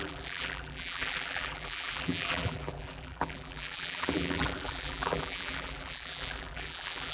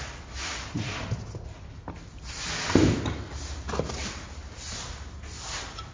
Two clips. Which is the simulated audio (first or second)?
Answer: first